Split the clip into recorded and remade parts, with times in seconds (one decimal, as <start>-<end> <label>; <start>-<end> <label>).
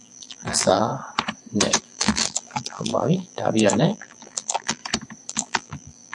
0.0-0.9 remade; 0.9-1.8 recorded; 1.8-4.8 remade; 4.8-5.3 recorded; 5.3-6.1 remade